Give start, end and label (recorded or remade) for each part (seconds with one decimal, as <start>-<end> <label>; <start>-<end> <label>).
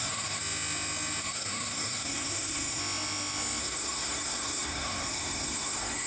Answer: 0.0-0.4 remade; 0.4-1.2 recorded; 1.2-2.8 remade; 2.8-3.6 recorded; 3.6-6.1 remade